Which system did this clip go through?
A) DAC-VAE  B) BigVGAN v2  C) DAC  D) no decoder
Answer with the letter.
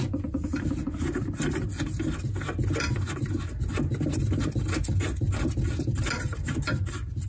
D